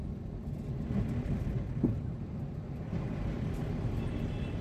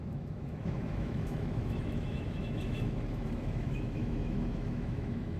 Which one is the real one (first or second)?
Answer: first